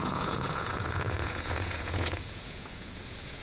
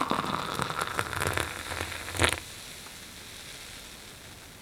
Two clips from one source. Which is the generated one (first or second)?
first